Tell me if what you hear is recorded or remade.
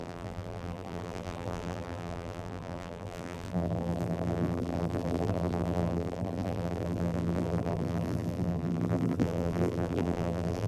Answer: remade